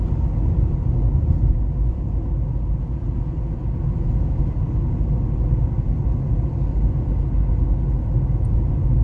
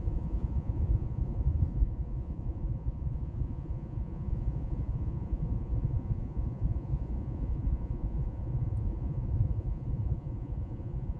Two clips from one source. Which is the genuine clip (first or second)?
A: first